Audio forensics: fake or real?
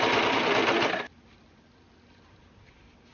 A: real